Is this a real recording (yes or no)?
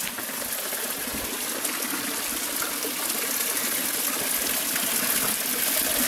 yes